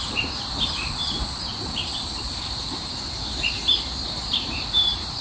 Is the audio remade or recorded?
remade